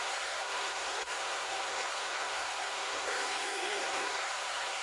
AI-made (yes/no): yes